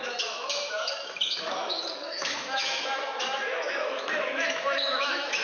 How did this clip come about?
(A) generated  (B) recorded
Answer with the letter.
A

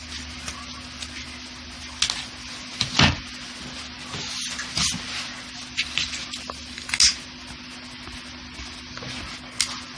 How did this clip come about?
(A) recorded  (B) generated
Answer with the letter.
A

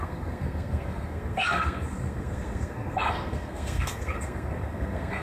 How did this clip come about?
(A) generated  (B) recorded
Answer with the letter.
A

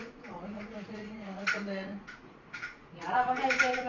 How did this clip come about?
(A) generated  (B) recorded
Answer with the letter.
A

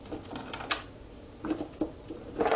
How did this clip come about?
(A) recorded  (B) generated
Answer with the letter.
A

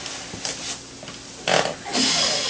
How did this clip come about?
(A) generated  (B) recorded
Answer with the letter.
A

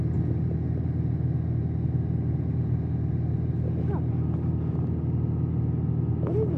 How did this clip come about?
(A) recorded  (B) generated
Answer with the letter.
A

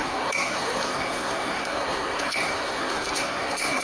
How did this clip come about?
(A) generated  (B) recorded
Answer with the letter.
A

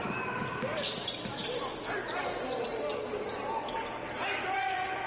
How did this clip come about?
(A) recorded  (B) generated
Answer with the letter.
A